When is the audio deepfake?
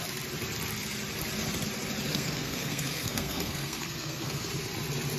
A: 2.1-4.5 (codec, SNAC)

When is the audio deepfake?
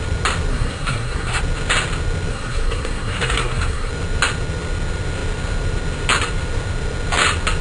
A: 0.5-1.4 (codec, SNAC); 2.3-3.9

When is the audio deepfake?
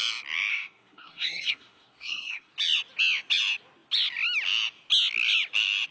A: 0.5-2.5 (codec, SNAC)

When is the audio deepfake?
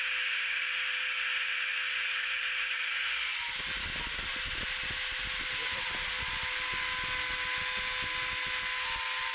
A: none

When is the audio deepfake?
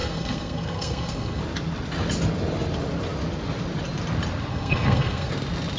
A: 0.0-1.4 (codec, SNAC); 4.5-5.3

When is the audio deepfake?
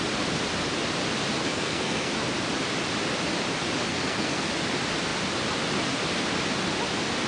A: 1.4-2.1 (codec, SNAC); 3.9-4.5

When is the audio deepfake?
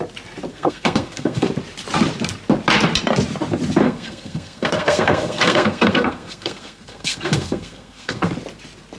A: 0.5-1.5 (codec, SNAC); 3.8-8.3